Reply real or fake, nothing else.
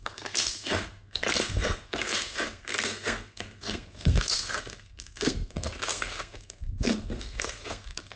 fake